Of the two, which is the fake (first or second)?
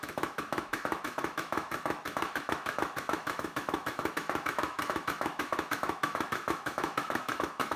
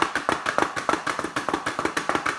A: first